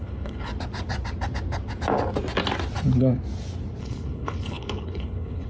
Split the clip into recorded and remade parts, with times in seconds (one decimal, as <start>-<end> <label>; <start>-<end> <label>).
0.0-0.5 remade; 0.5-3.8 recorded; 3.8-5.5 remade